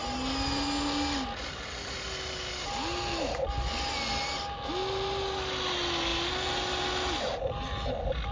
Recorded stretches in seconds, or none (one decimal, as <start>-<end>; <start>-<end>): 0.0-8.3